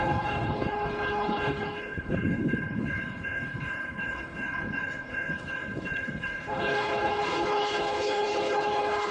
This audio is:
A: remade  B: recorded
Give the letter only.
A